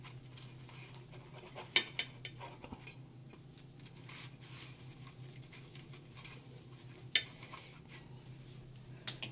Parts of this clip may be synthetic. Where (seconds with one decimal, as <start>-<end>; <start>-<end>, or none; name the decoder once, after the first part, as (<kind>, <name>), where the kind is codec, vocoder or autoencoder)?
none